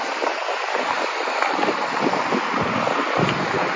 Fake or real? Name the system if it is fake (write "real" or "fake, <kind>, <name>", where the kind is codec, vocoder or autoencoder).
real